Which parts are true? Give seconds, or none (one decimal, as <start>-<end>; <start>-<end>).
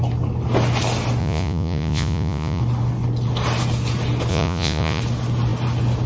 0.0-1.2; 2.6-4.3; 5.0-6.1